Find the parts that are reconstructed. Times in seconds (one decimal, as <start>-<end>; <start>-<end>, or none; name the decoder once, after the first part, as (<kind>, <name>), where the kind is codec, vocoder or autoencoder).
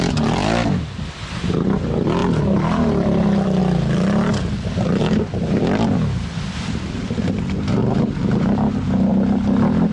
none